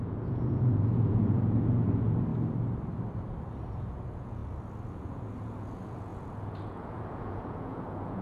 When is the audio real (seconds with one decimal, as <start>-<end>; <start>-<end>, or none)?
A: 2.3-3.7; 4.4-4.9